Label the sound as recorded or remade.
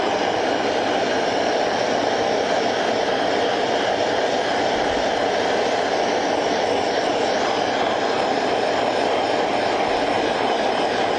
recorded